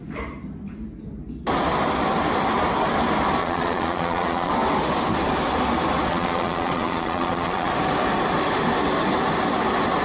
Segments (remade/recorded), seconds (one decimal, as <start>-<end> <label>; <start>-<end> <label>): 0.0-3.4 recorded; 3.4-4.5 remade; 4.5-6.1 recorded; 6.1-7.7 remade; 7.7-10.0 recorded